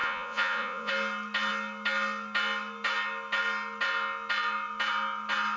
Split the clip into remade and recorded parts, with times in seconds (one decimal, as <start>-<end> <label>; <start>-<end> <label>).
0.0-0.9 remade; 0.9-5.6 recorded